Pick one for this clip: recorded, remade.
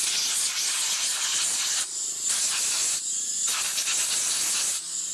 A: recorded